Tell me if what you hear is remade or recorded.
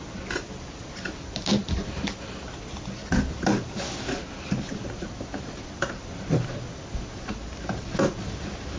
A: recorded